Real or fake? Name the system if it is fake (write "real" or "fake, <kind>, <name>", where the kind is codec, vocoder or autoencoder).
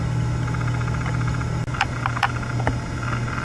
real